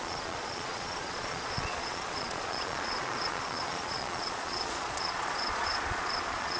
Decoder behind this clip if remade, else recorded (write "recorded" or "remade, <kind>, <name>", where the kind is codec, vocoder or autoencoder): remade, vocoder, Vocos